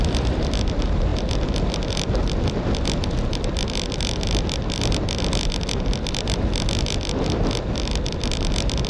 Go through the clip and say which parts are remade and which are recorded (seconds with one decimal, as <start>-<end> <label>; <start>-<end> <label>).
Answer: 0.0-8.9 recorded